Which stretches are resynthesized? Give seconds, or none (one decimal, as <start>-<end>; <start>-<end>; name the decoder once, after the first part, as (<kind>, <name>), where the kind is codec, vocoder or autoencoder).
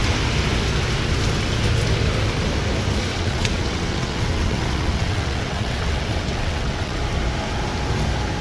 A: 3.1-7.0 (vocoder, WaveNeXt)